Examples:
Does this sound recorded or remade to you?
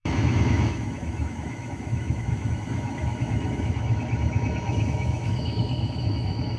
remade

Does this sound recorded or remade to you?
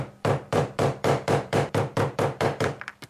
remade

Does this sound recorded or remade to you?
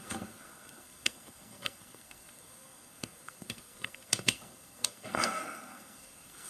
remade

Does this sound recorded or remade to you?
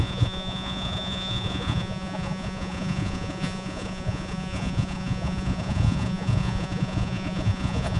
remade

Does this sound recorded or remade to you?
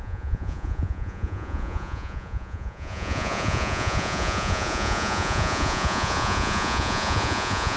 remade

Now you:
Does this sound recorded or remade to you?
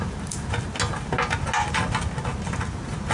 recorded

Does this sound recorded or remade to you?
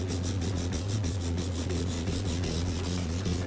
remade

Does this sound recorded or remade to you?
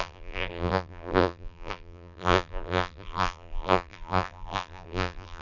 remade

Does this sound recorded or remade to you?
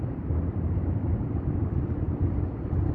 recorded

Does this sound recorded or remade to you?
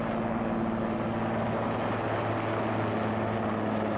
recorded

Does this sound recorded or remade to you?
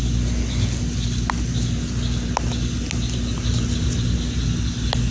recorded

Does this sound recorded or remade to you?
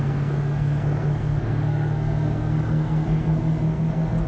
remade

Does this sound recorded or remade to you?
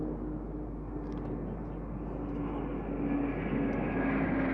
recorded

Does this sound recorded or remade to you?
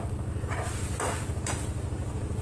recorded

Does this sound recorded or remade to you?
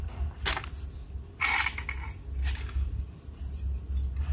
recorded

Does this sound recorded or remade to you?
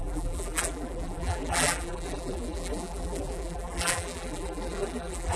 remade